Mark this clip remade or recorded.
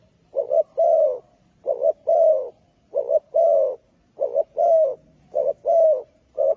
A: recorded